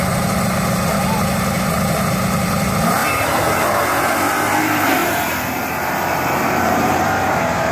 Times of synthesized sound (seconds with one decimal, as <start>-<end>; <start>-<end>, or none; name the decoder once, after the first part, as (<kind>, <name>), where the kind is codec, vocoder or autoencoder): 0.0-3.0 (vocoder, BigVGAN v2); 4.6-7.7